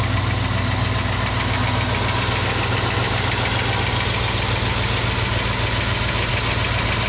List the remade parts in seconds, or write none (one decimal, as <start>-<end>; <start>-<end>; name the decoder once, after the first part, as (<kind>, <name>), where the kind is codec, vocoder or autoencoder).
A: none